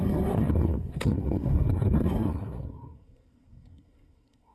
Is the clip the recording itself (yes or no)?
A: no